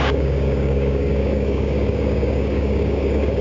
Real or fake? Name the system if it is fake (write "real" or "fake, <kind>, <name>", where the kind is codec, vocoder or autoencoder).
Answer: fake, codec, DAC